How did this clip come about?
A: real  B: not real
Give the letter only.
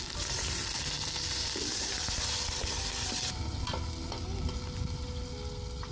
A